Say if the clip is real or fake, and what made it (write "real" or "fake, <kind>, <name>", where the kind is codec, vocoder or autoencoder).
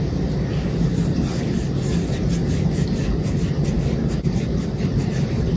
real